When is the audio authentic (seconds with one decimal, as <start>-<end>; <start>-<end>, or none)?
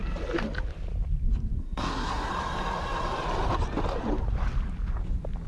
0.0-1.6; 2.3-5.5